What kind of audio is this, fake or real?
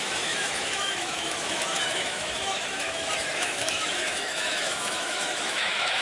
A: fake